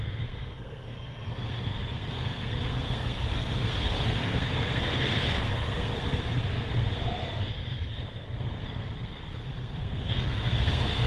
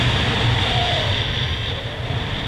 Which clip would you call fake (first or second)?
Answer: first